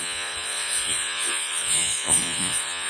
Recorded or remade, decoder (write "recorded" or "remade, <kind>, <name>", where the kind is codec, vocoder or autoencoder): remade, vocoder, Vocos